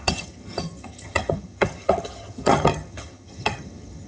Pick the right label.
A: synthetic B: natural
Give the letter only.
A